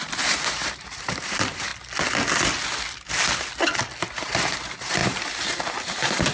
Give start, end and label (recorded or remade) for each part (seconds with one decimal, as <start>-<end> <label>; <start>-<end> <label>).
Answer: 0.0-1.7 remade; 1.7-4.0 recorded; 4.0-6.3 remade